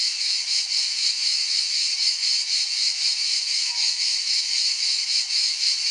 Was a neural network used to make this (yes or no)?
yes